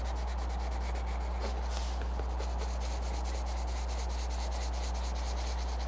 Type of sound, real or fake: real